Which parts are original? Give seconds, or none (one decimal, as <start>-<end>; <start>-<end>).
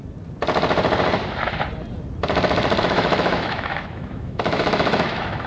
0.0-2.8